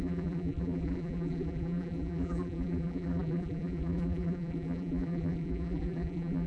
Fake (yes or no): yes